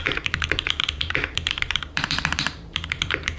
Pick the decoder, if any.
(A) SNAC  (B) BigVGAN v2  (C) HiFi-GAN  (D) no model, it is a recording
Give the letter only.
B